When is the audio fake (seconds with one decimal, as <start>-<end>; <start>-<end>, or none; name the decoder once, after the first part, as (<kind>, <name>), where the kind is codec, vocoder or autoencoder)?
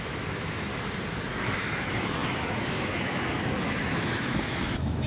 0.0-0.7 (autoencoder, DAC-VAE); 1.3-5.1